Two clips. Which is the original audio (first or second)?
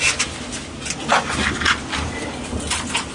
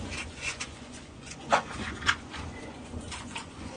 first